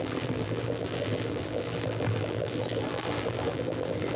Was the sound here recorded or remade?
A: remade